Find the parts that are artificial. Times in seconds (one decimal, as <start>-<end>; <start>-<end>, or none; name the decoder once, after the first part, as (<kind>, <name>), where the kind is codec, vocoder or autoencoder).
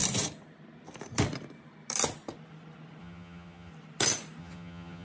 3.0-3.7 (vocoder, HiFi-GAN); 4.4-5.0